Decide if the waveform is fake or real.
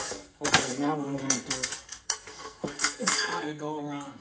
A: fake